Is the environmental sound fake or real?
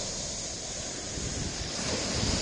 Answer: real